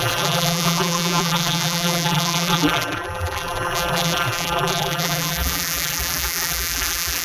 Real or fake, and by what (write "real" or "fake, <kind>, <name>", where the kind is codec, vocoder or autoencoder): fake, vocoder, BigVGAN v2